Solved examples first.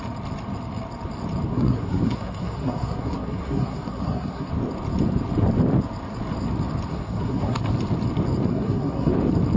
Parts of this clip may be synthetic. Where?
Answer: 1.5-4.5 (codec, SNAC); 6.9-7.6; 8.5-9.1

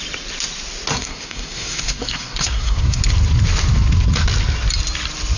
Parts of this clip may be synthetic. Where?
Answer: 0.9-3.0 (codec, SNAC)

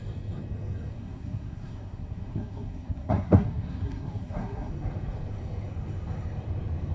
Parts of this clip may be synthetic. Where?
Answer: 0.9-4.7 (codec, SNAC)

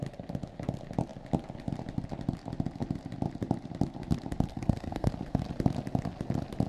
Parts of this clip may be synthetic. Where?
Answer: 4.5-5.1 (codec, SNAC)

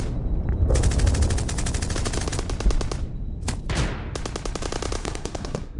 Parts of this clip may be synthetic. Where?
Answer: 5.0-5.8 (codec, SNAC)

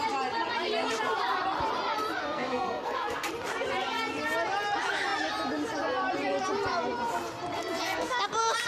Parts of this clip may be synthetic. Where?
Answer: 2.2-3.3 (codec, SNAC); 7.6-8.2

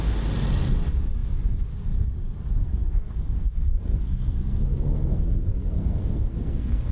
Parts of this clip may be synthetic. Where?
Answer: 2.6-6.9 (codec, SNAC)